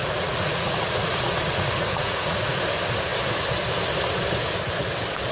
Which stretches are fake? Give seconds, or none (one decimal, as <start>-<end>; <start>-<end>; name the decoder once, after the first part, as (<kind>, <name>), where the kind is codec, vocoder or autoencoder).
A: 0.0-2.6 (vocoder, Vocos)